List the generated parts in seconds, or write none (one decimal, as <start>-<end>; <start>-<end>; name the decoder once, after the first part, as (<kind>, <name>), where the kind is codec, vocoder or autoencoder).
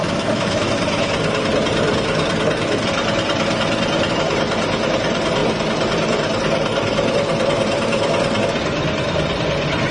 0.0-0.7 (autoencoder, DAC-VAE)